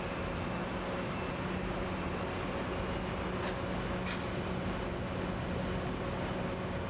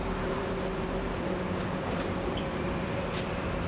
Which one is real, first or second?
first